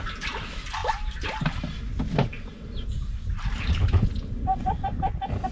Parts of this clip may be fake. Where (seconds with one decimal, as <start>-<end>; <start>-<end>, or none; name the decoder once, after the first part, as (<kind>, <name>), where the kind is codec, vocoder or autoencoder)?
0.8-1.8 (vocoder, BigVGAN v2); 2.3-4.7